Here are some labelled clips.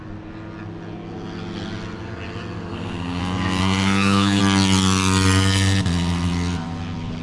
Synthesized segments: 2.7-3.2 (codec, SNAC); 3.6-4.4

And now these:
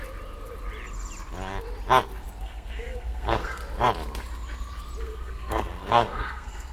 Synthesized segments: 2.4-3.6 (codec, SNAC); 5.0-6.7

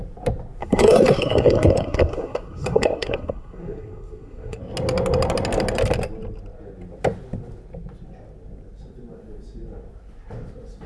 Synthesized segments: 0.6-4.6 (codec, SNAC)

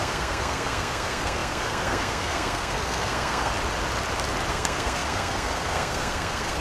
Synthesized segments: 0.0-3.5 (codec, SNAC); 4.5-6.6

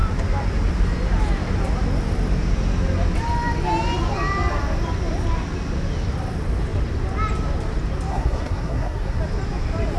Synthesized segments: 8.1-9.2 (codec, SNAC)

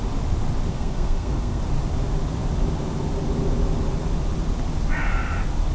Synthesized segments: 0.7-1.6 (codec, SNAC)